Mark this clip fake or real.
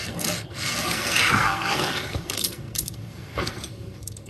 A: fake